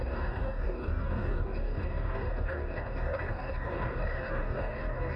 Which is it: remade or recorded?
remade